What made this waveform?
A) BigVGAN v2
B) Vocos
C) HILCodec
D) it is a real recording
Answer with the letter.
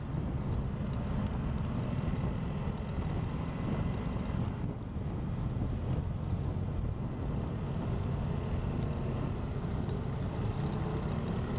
D